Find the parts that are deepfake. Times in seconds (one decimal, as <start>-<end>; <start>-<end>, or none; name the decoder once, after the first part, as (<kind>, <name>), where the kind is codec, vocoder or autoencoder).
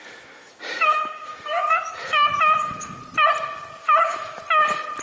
0.0-3.0 (autoencoder, DAC-VAE); 3.8-4.4